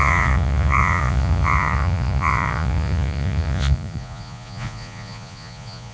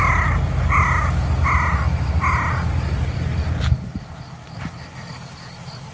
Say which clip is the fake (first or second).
first